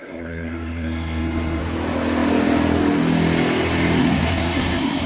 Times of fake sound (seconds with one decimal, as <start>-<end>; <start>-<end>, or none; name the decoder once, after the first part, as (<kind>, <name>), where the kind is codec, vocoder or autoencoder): 0.0-1.6 (codec, SNAC); 4.0-5.1